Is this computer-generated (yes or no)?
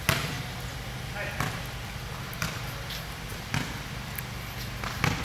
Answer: no